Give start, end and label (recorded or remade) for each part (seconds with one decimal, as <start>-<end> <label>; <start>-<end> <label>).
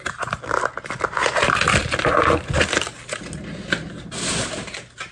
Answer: 0.0-5.1 recorded